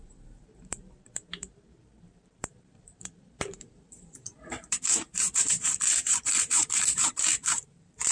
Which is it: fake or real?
fake